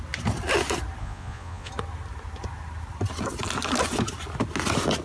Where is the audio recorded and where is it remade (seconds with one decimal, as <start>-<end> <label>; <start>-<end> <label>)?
0.0-1.0 recorded; 1.0-1.7 remade; 1.7-5.0 recorded

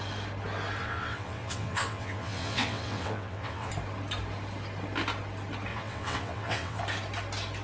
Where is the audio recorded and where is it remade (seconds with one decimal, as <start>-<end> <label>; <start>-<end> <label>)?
0.0-0.8 recorded; 0.8-3.7 remade; 3.7-5.7 recorded; 5.7-6.8 remade; 6.8-7.6 recorded

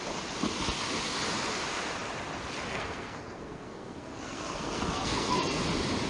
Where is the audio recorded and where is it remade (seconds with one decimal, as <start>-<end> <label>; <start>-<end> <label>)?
0.0-2.7 recorded; 2.7-5.6 remade; 5.6-6.1 recorded

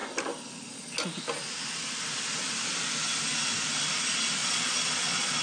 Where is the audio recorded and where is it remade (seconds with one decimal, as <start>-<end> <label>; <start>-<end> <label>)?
0.0-4.4 recorded; 4.4-5.4 remade

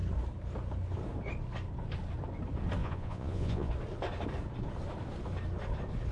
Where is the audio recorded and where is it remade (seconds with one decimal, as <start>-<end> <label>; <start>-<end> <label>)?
0.0-2.8 recorded; 2.8-3.7 remade; 3.7-6.1 recorded